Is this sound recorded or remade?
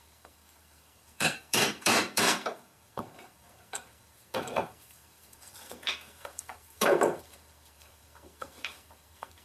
remade